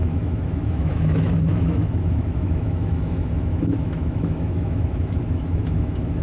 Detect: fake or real fake